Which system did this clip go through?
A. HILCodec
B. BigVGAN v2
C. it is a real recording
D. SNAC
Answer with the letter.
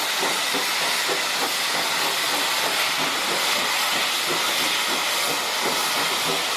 C